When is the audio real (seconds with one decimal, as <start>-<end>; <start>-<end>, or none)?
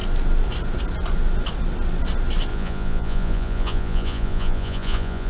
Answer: 0.0-2.5